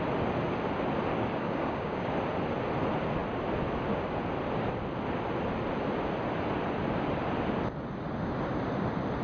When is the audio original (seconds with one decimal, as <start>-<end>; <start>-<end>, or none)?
0.0-1.1; 2.1-9.2